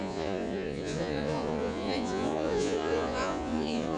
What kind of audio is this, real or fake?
fake